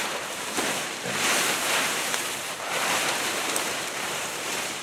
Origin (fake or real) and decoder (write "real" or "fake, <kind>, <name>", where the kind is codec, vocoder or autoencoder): fake, vocoder, BigVGAN v2